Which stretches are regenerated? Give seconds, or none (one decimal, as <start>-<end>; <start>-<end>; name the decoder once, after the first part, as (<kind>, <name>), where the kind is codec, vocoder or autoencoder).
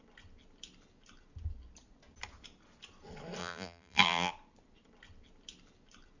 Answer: 3.4-4.3 (vocoder, BigVGAN v2)